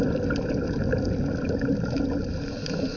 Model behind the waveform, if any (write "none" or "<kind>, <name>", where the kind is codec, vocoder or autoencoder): none